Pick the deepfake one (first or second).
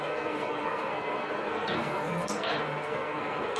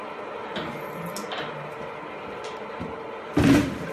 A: first